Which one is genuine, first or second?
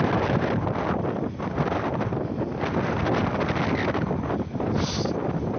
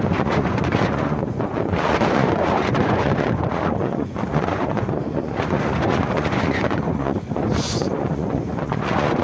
first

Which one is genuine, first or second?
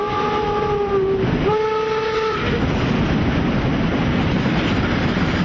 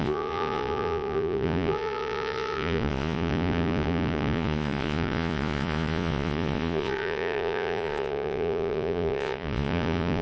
first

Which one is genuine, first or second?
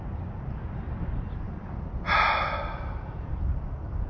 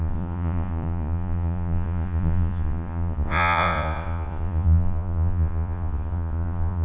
first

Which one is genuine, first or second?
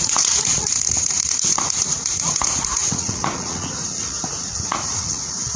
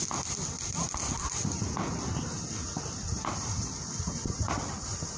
second